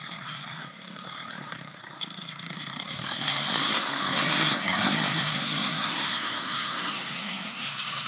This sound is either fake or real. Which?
fake